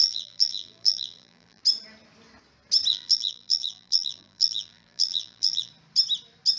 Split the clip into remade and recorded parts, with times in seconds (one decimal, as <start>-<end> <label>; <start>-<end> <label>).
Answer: 0.0-1.6 remade; 1.6-2.9 recorded; 2.9-5.7 remade; 5.7-6.6 recorded